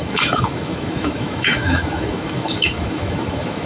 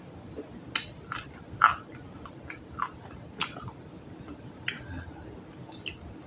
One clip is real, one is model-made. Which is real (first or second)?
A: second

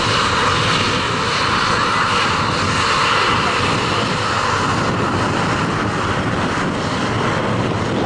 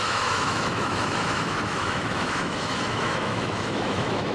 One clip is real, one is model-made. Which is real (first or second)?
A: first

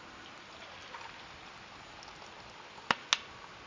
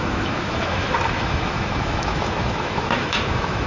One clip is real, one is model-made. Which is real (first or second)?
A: first